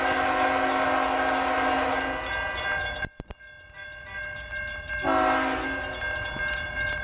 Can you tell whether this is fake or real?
real